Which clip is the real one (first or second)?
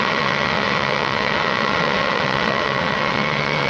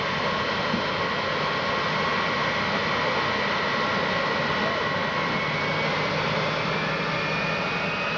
second